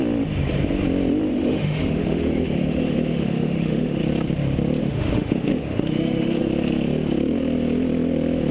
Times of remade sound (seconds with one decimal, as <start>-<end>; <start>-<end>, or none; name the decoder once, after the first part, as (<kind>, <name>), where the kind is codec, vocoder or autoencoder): 1.3-4.0 (autoencoder, DAC-VAE); 4.8-6.4

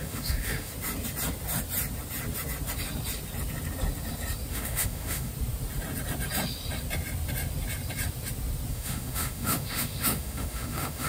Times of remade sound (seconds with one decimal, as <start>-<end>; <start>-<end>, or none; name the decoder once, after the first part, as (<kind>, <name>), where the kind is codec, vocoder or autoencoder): 0.0-0.7 (autoencoder, DAC-VAE); 4.5-5.3; 8.7-11.1